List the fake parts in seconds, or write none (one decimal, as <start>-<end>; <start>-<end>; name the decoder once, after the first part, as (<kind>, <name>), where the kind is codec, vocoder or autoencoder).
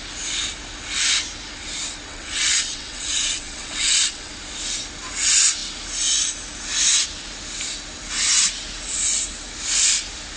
2.1-4.3 (vocoder, WaveNeXt)